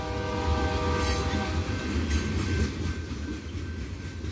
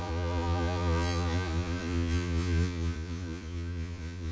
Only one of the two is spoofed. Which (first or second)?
second